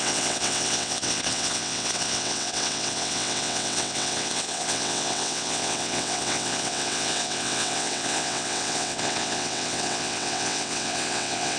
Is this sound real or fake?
fake